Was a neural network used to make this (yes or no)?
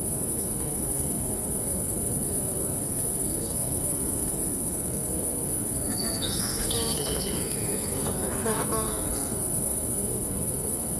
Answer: yes